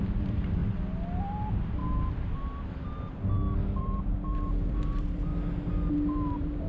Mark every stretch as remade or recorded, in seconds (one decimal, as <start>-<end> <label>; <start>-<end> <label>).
0.0-0.6 remade; 0.6-1.2 recorded; 1.2-1.8 remade; 1.8-3.8 recorded; 3.8-5.3 remade; 5.3-5.9 recorded; 5.9-6.7 remade